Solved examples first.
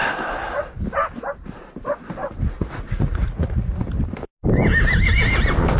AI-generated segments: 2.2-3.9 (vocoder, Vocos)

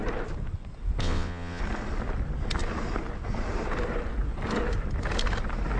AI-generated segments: 1.0-1.6 (vocoder, WaveNeXt)

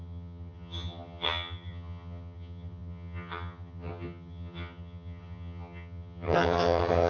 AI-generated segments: 0.0-7.1 (vocoder, HiFi-GAN)

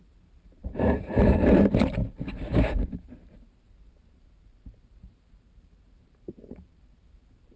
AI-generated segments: 0.0-2.0 (vocoder, BigVGAN v2); 3.7-7.6

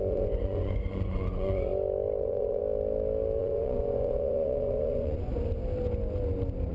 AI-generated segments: 0.0-1.7 (vocoder, Vocos); 2.2-2.6; 3.4-5.3

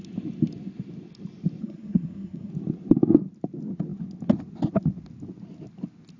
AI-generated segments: 1.6-2.5 (codec, SNAC)

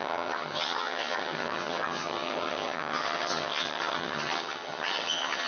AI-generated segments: 0.0-5.5 (vocoder, HiFi-GAN)